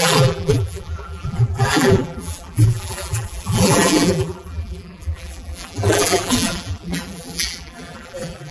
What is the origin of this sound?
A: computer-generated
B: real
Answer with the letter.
A